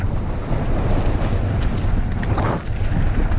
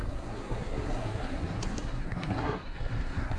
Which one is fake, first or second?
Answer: second